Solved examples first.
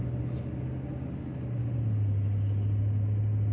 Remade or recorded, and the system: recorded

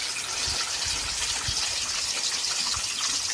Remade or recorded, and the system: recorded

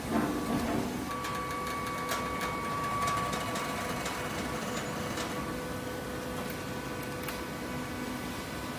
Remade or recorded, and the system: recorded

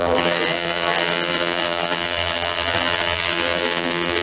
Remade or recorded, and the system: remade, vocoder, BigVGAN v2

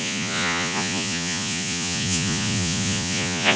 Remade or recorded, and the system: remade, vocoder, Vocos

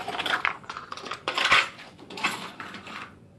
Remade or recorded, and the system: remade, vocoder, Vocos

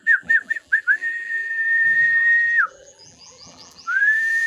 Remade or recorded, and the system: remade, vocoder, BigVGAN v2